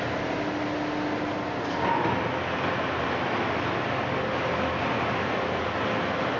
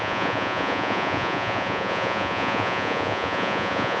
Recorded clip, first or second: first